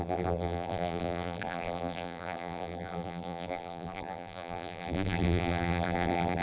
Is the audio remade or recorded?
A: remade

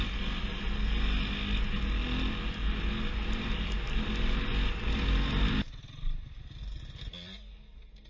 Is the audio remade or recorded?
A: recorded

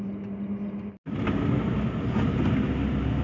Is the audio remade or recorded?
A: recorded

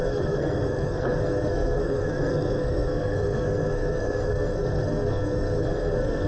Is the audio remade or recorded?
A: remade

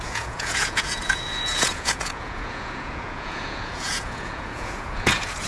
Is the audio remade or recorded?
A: remade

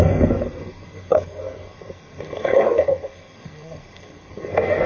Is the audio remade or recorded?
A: remade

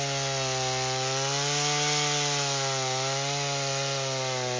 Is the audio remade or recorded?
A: recorded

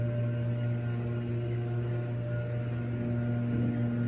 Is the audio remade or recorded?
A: recorded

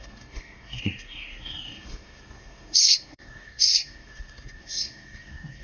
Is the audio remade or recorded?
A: remade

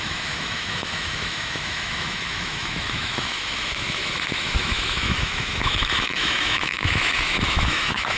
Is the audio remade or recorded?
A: remade